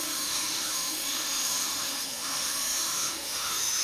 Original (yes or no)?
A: no